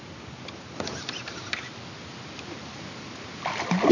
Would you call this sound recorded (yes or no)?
yes